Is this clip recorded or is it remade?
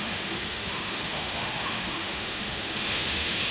remade